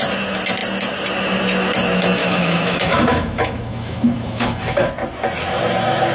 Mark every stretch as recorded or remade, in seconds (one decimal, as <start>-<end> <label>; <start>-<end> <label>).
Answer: 0.0-2.2 recorded; 2.2-4.9 remade; 4.9-6.1 recorded